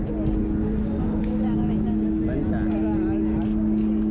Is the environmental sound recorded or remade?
recorded